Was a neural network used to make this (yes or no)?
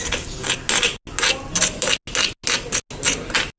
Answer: no